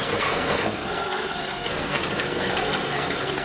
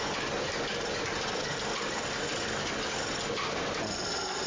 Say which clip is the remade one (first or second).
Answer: first